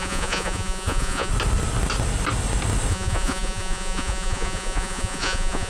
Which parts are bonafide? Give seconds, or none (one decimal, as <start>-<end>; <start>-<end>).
1.3-2.9